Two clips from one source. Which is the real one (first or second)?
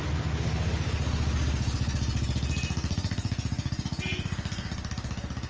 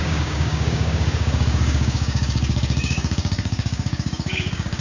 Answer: first